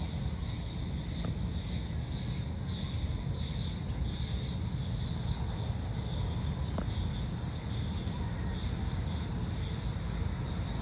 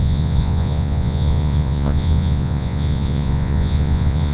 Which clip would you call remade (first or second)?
second